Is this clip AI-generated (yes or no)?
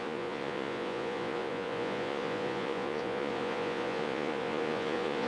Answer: yes